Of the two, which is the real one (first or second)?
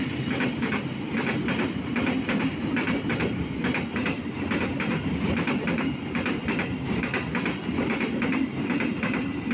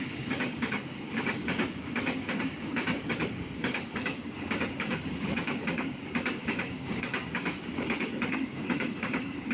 first